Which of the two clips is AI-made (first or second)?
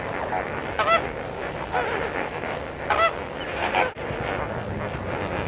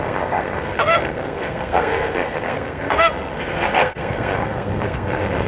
second